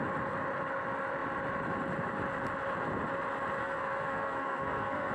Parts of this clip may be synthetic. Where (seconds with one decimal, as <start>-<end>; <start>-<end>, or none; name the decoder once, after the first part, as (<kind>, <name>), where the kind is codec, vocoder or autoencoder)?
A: 3.6-5.1 (codec, SNAC)